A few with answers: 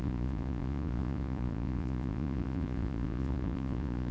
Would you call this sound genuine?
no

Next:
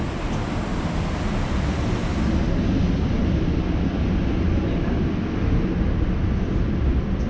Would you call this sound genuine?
yes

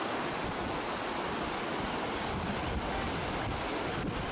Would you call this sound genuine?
yes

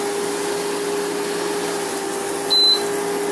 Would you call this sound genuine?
yes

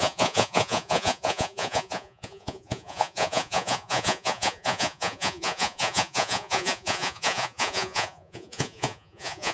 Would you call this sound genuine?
no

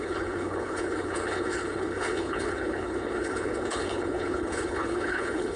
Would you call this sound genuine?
no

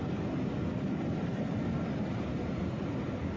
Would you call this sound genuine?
yes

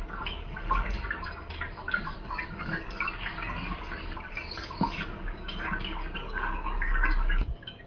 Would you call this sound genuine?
no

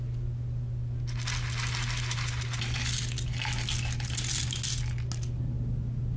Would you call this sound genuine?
yes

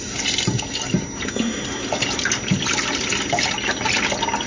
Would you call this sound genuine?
yes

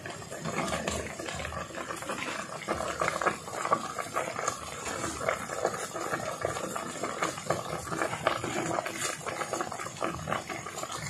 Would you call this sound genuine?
yes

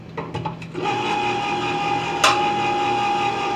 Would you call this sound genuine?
yes